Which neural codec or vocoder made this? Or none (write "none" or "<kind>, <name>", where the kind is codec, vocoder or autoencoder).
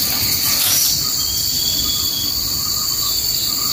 vocoder, BigVGAN v2